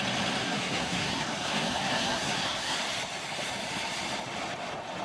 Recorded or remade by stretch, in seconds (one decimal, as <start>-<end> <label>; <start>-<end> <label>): 0.0-0.4 recorded; 0.4-2.8 remade; 2.8-5.0 recorded